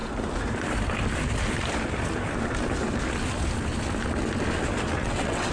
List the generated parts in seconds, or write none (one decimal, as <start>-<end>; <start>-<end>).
4.9-5.5

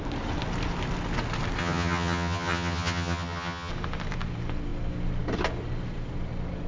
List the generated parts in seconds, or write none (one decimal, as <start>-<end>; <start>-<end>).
1.6-3.7

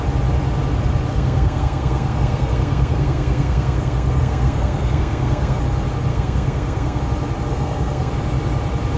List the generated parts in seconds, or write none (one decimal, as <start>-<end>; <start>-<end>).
1.1-5.6; 6.1-7.0; 7.5-8.1